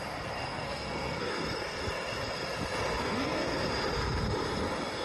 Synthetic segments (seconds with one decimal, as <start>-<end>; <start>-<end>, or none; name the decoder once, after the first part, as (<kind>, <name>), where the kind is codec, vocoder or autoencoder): 0.4-1.3 (codec, SNAC); 3.0-3.5